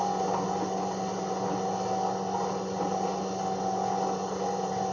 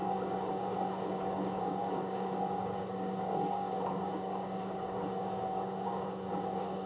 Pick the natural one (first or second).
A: first